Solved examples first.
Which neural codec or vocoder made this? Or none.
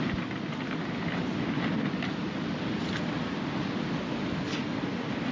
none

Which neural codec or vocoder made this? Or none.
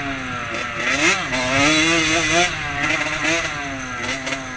none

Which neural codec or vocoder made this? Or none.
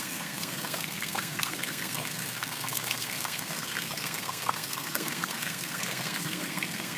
codec, SNAC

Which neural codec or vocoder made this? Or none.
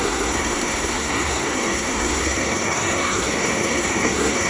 codec, SNAC